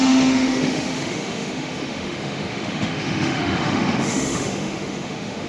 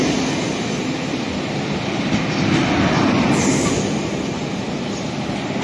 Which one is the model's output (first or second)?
first